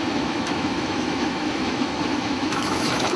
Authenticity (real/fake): fake